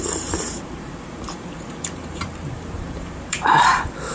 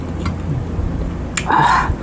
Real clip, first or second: second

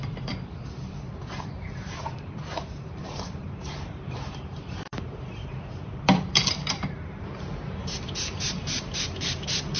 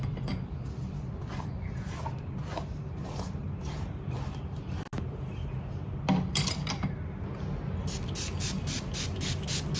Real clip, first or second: second